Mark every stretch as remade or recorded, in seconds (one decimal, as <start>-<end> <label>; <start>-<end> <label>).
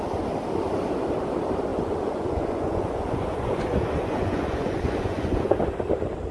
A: 0.0-1.7 recorded; 1.7-5.5 remade; 5.5-6.3 recorded